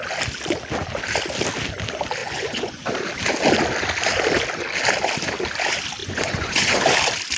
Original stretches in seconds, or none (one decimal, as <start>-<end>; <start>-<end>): 0.0-2.2; 2.9-6.0; 6.8-7.4